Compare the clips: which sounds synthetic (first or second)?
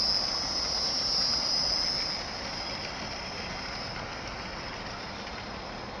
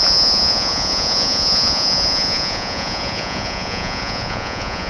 second